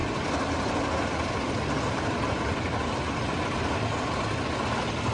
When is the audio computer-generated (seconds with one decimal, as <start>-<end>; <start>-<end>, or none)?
none